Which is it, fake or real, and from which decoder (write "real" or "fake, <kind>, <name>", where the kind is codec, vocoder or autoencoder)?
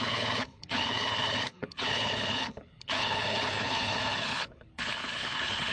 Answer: fake, codec, HILCodec